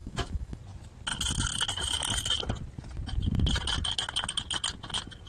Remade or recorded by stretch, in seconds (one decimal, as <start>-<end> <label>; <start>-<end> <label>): 0.0-0.6 remade; 0.6-5.3 recorded